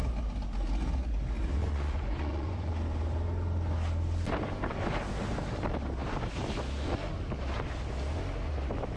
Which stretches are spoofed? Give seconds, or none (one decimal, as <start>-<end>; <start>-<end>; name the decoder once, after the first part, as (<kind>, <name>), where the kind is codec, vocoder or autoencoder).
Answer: 1.6-2.7 (vocoder, Vocos)